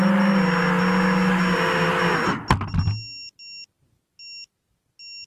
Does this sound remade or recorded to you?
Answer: recorded